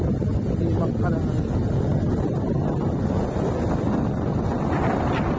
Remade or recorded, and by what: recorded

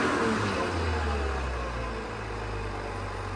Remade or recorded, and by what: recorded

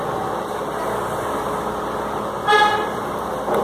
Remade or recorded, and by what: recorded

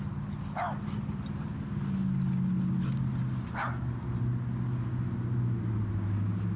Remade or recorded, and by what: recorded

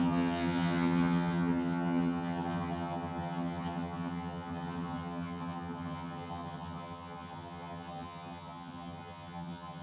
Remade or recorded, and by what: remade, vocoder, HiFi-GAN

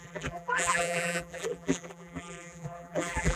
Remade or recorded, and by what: remade, vocoder, BigVGAN v2